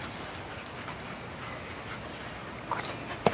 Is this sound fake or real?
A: real